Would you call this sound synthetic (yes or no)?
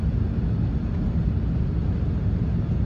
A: no